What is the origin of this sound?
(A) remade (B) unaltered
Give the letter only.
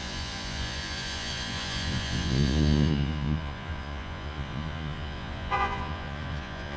A